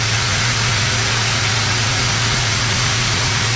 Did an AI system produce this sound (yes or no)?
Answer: yes